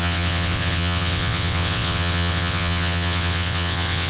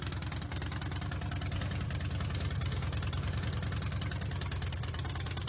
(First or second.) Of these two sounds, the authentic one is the second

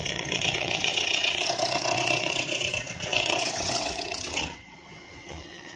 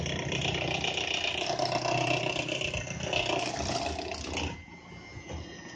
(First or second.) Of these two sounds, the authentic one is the second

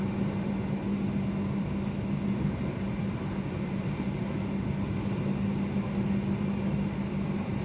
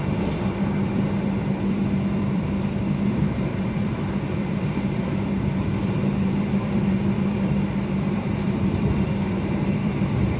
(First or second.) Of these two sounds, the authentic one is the first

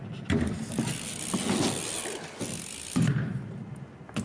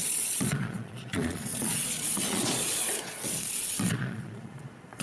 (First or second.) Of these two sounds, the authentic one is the first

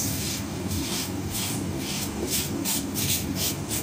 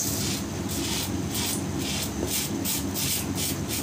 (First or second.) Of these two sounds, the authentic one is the second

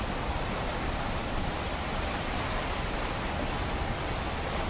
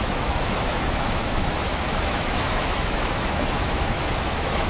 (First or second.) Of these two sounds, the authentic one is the first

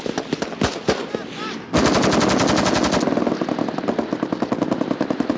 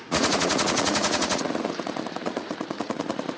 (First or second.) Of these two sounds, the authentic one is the first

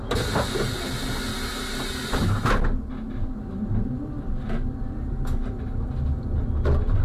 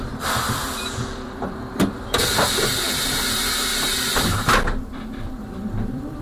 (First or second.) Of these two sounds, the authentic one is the first